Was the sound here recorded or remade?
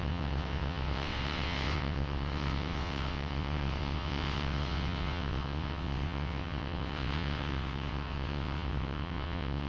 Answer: remade